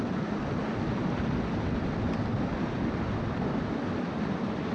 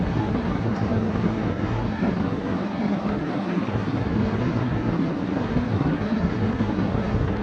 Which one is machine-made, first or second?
second